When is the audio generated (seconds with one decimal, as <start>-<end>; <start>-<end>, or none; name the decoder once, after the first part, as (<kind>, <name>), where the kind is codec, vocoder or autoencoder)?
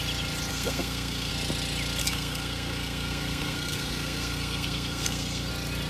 0.5-1.3 (codec, SNAC); 2.0-5.5